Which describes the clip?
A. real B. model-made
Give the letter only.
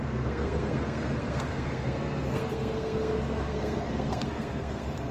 B